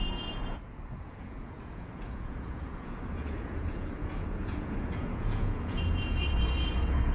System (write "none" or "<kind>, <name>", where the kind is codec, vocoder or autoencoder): vocoder, Vocos